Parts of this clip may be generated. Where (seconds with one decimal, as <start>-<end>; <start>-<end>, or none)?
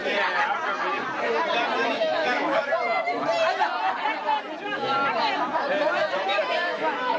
1.9-2.7; 6.6-7.2